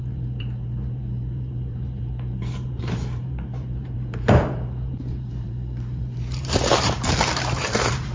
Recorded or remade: remade